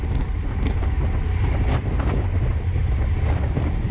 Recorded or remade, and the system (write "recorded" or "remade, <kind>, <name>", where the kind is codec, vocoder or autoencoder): recorded